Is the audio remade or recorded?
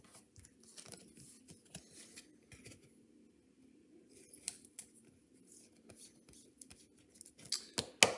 recorded